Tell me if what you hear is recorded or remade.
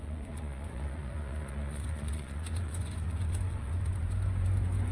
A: remade